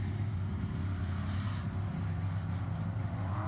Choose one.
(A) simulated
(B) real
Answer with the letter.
B